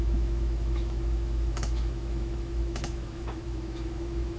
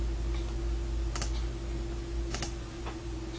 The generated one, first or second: first